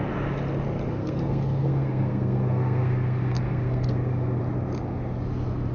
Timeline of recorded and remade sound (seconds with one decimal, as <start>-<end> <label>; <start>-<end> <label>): 0.0-1.0 recorded; 1.0-4.4 remade; 4.4-5.7 recorded